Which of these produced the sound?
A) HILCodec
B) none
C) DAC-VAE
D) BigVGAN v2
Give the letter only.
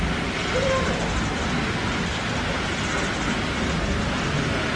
B